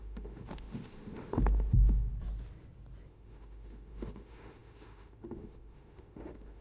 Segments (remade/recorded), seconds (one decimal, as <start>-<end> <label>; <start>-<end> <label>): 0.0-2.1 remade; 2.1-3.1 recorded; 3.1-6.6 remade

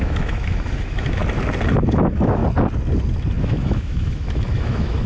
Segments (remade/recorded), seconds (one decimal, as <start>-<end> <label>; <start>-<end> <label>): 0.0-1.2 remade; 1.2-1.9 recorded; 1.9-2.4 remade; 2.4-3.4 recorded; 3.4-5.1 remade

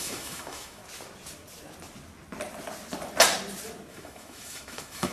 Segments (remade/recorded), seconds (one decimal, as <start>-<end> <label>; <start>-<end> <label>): 0.0-0.8 remade; 0.8-3.9 recorded; 3.9-5.1 remade